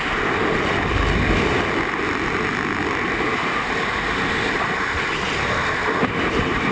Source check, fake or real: real